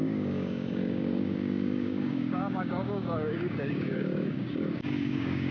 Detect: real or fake fake